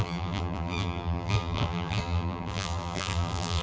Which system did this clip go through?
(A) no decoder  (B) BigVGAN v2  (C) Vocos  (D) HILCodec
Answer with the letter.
B